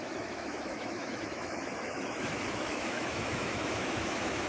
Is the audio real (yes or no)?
no